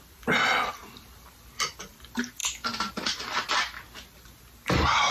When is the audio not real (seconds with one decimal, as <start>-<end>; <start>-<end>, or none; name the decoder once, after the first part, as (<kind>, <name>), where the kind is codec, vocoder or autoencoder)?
none